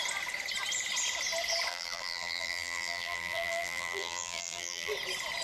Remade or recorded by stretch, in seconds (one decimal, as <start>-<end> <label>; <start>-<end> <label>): 0.0-1.7 recorded; 1.7-4.9 remade; 4.9-5.4 recorded